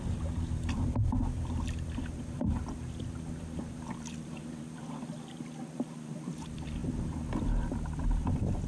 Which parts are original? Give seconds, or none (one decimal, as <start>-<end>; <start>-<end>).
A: none